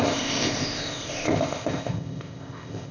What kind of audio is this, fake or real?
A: fake